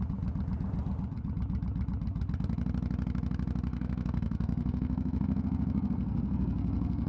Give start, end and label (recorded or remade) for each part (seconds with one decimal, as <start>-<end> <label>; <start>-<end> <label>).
0.0-3.7 recorded; 3.7-7.1 remade